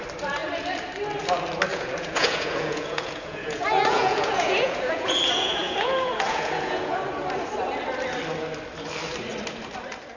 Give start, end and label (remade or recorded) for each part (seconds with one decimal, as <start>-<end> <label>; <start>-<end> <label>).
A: 0.0-1.7 recorded; 1.7-6.9 remade; 6.9-10.2 recorded